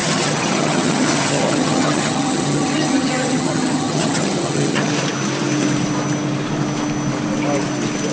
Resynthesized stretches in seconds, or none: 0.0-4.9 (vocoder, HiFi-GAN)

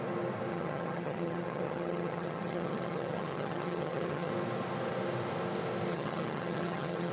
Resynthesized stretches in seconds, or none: 0.5-4.3 (vocoder, HiFi-GAN); 5.9-7.1

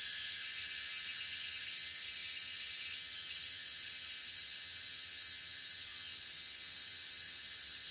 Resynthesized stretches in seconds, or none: 0.0-7.9 (vocoder, HiFi-GAN)

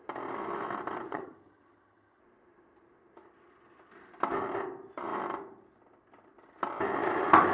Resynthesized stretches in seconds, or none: 1.1-2.2 (vocoder, HiFi-GAN)

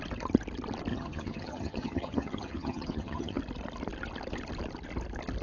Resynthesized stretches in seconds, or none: 0.9-3.4 (vocoder, HiFi-GAN)